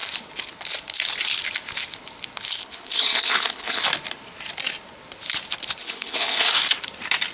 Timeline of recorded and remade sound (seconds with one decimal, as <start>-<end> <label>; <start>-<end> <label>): 0.0-2.6 recorded; 2.6-3.8 remade; 3.8-5.8 recorded; 5.8-6.5 remade; 6.5-7.3 recorded